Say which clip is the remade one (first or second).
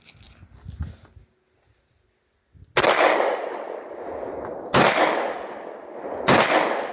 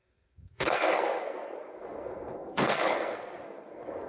second